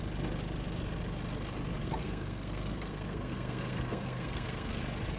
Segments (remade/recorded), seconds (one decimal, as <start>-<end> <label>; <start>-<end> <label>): 0.0-1.8 recorded; 1.8-4.8 remade; 4.8-5.2 recorded